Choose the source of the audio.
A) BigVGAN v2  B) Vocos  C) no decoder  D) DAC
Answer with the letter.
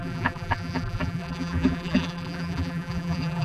A